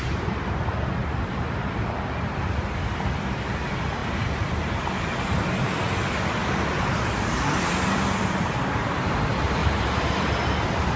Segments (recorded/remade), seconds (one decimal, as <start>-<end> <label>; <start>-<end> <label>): 0.0-1.0 recorded; 1.0-1.8 remade; 1.8-4.0 recorded; 4.0-5.3 remade; 5.3-6.4 recorded; 6.4-7.1 remade; 7.1-9.6 recorded; 9.6-10.5 remade; 10.5-11.0 recorded